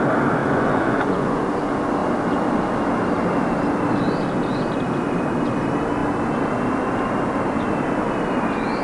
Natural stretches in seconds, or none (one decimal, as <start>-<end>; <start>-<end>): 0.0-0.4; 1.4-8.8